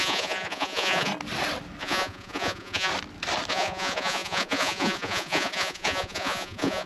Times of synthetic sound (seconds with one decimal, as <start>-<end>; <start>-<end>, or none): 0.0-1.1; 1.8-2.9; 3.5-6.9